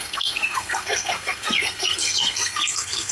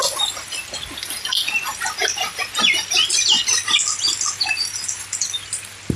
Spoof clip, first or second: first